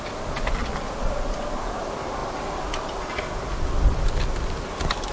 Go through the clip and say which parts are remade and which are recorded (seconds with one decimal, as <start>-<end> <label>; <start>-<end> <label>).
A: 0.0-5.1 recorded